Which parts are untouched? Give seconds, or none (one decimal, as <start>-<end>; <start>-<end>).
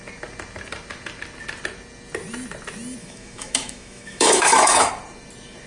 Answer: 0.0-3.0; 4.9-5.7